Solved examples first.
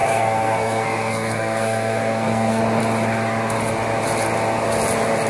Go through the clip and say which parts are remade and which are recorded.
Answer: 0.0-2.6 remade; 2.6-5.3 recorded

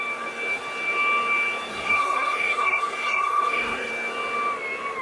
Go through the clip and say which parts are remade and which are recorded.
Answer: 0.0-1.7 recorded; 1.7-3.9 remade; 3.9-5.0 recorded

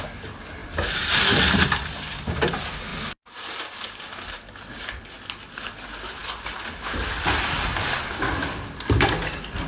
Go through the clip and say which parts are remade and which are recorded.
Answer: 0.0-9.7 recorded